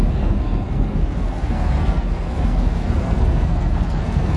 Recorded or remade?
remade